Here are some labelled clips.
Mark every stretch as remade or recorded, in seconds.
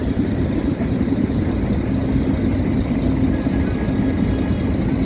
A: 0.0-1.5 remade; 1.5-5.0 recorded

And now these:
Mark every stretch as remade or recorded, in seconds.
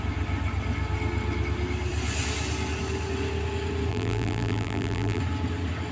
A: 0.0-3.9 recorded; 3.9-5.2 remade; 5.2-5.9 recorded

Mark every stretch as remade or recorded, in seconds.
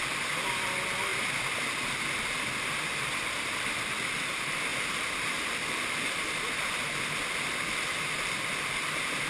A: 0.0-4.7 recorded; 4.7-6.7 remade; 6.7-9.3 recorded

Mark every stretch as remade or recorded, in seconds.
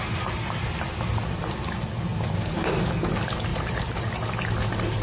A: 0.0-2.1 recorded; 2.1-2.9 remade; 2.9-3.5 recorded; 3.5-4.3 remade; 4.3-5.0 recorded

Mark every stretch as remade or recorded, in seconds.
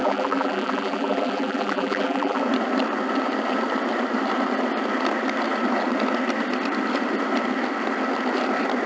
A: 0.0-2.4 remade; 2.4-8.9 recorded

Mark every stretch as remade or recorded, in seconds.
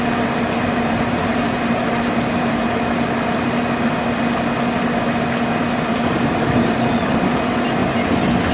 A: 0.0-2.6 remade; 2.6-5.6 recorded; 5.6-7.8 remade; 7.8-8.5 recorded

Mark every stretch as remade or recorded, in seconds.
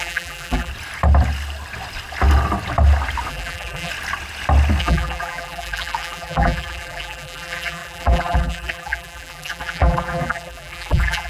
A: 0.0-0.7 remade; 0.7-3.3 recorded; 3.3-3.9 remade; 3.9-4.8 recorded; 4.8-11.3 remade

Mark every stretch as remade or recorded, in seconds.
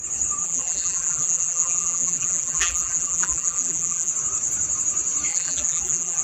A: 0.0-0.4 recorded; 0.4-4.1 remade; 4.1-5.3 recorded; 5.3-6.2 remade